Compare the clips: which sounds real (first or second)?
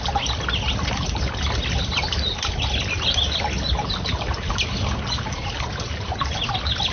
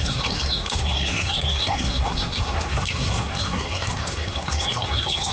first